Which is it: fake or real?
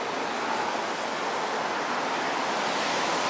real